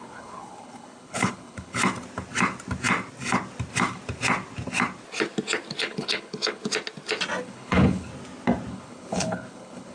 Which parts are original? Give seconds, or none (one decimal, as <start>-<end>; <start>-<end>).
1.8-5.8; 6.6-7.4; 8.1-8.7